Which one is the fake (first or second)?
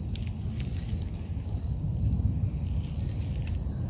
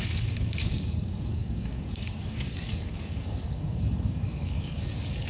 second